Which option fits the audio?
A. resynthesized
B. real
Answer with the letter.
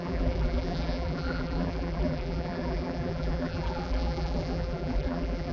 A